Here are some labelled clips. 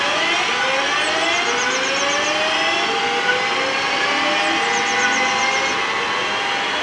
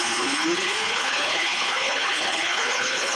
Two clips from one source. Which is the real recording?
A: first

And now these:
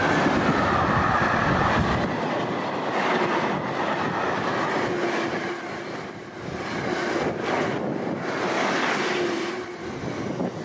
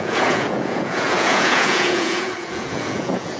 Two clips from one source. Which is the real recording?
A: first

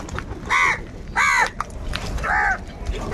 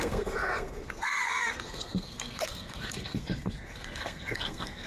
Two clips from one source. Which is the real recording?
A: first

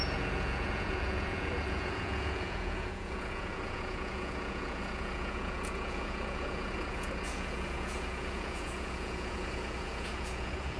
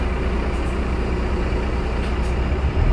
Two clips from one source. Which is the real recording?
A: second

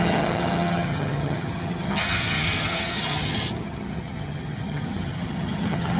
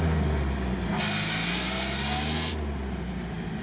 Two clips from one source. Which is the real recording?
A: second